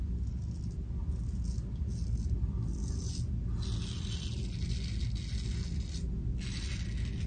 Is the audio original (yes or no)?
yes